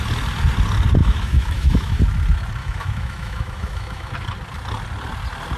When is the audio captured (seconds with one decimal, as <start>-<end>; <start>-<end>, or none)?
0.0-1.0; 2.0-2.6; 4.1-5.6